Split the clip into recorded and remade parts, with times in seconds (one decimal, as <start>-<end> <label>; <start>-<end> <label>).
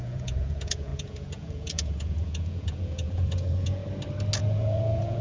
0.0-3.8 remade; 3.8-4.4 recorded; 4.4-5.2 remade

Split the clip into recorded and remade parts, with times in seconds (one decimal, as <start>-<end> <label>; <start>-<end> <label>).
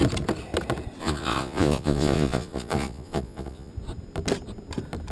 0.0-1.0 recorded; 1.0-3.7 remade; 3.7-5.1 recorded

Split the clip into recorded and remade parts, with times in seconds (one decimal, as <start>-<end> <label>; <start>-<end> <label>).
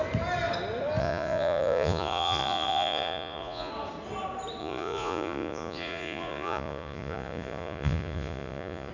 0.0-1.0 recorded; 1.0-3.7 remade; 3.7-4.6 recorded; 4.6-8.9 remade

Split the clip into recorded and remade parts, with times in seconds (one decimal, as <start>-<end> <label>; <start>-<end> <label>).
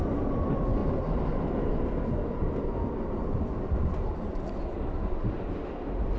0.0-6.2 recorded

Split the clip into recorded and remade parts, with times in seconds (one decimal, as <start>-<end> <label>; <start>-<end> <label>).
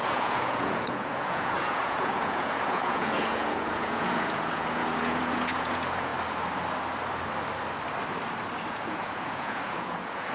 0.0-6.1 remade; 6.1-8.7 recorded; 8.7-10.3 remade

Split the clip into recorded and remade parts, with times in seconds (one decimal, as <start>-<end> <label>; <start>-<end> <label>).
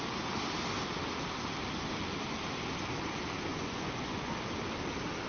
0.0-3.5 recorded; 3.5-4.3 remade; 4.3-5.3 recorded